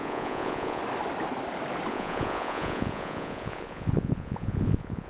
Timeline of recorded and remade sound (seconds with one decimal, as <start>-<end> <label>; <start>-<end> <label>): 0.0-0.8 remade; 0.8-1.9 recorded; 1.9-5.1 remade